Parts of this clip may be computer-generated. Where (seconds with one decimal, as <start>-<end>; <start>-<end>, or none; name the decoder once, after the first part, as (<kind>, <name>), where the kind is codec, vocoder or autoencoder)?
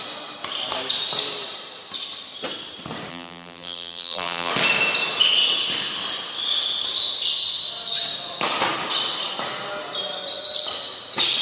3.1-4.5 (vocoder, BigVGAN v2)